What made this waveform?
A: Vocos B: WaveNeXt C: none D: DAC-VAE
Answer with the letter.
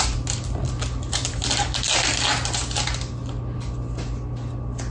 C